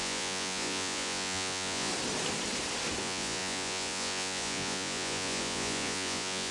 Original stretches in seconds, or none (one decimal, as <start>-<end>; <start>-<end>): 1.9-3.0